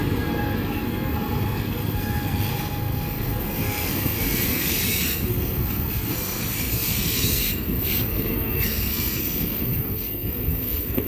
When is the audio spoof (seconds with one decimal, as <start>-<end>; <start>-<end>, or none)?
0.0-11.1